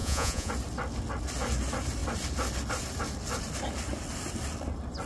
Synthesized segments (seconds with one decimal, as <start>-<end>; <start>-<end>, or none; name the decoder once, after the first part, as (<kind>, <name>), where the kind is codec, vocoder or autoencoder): 0.0-0.5 (vocoder, Vocos)